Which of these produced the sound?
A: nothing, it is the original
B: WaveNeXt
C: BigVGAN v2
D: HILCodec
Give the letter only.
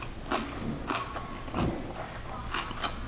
A